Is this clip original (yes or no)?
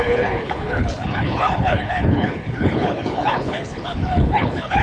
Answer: no